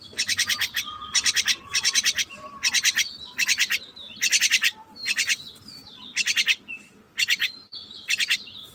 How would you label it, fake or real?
fake